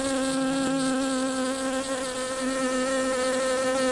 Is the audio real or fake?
real